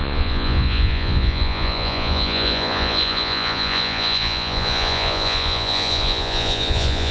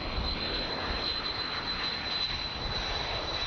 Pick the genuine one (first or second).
second